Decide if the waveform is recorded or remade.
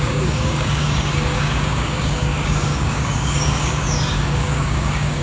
remade